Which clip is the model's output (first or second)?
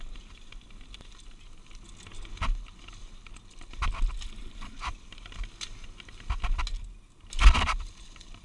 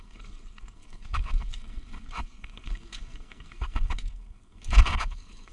second